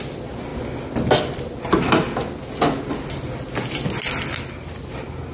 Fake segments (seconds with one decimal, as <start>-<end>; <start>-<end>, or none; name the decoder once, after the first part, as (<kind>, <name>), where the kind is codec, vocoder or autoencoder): none